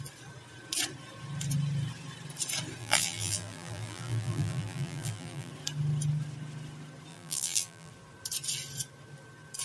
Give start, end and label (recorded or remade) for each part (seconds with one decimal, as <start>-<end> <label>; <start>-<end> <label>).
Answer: 0.0-2.8 recorded; 2.8-5.5 remade; 5.5-7.1 recorded; 7.1-7.9 remade; 7.9-9.6 recorded